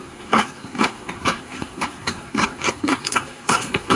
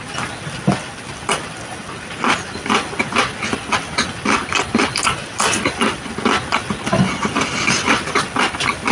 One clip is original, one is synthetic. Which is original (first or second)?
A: second